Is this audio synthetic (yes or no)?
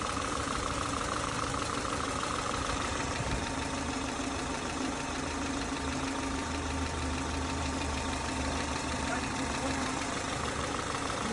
yes